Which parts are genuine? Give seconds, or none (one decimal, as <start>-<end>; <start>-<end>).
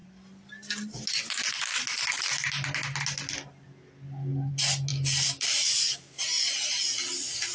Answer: 0.0-7.5